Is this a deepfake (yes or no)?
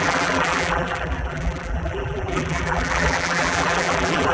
yes